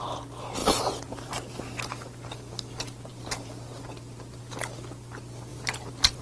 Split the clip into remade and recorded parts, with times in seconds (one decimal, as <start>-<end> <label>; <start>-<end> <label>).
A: 0.0-0.6 recorded; 0.6-1.3 remade; 1.3-3.1 recorded; 3.1-4.4 remade; 4.4-5.5 recorded; 5.5-6.2 remade